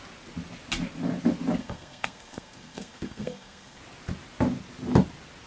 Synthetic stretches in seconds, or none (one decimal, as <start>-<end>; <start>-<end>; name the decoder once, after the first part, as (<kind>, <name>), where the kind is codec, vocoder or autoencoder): 1.6-3.8 (codec, SNAC)